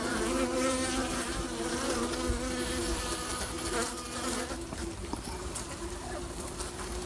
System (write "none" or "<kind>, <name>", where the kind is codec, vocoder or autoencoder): none